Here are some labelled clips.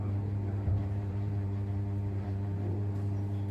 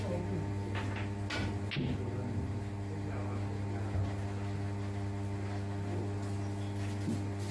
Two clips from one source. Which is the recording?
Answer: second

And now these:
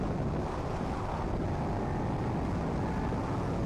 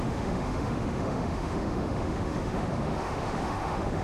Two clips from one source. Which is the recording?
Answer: first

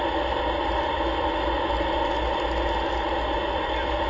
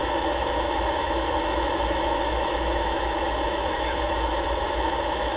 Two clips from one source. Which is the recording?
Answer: first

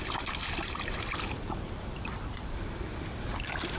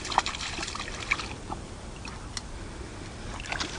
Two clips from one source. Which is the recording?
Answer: second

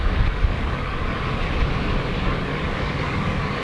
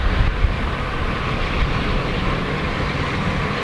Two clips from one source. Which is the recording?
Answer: second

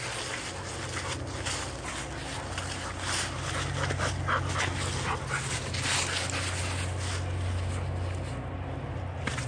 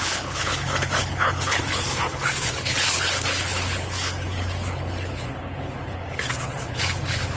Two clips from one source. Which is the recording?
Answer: first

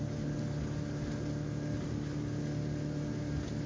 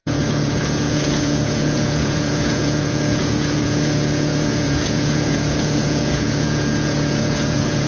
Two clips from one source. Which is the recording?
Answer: first